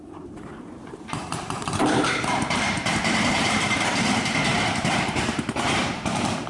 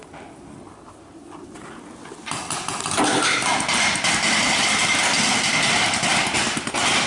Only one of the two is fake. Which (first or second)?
first